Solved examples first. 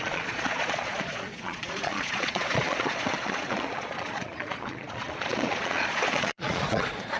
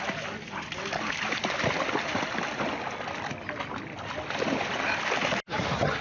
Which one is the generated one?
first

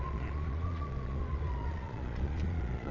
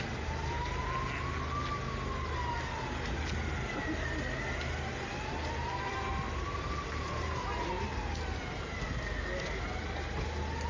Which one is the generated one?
first